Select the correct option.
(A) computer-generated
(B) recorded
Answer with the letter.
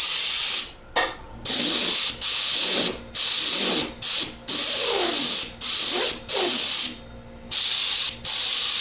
B